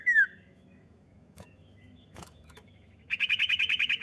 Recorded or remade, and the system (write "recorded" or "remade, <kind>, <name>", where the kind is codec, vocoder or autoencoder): remade, autoencoder, DAC-VAE